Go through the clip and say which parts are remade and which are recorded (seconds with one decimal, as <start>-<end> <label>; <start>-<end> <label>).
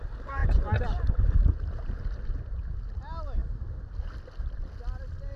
0.0-5.4 recorded